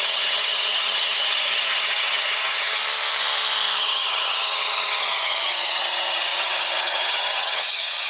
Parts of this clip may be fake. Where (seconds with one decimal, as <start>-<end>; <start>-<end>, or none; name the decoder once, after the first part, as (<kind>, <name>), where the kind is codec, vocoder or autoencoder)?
0.0-2.8 (vocoder, HiFi-GAN); 3.8-8.1